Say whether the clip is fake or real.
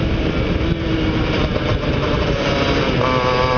real